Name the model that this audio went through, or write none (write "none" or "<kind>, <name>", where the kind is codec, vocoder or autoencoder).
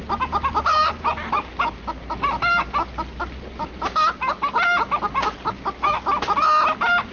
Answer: none